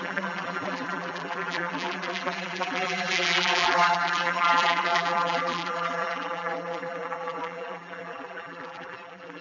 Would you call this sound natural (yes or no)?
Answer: no